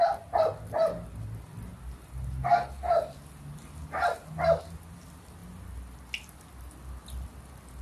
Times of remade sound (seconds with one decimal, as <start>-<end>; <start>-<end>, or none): none